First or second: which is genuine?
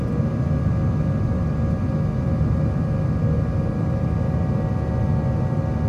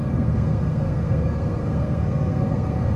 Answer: first